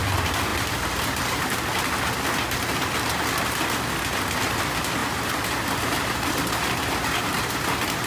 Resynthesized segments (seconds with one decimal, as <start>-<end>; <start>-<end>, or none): 5.0-7.4